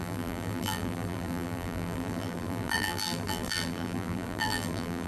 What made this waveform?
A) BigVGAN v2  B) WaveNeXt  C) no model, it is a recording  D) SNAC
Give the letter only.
A